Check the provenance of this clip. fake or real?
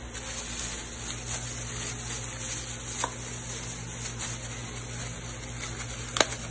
real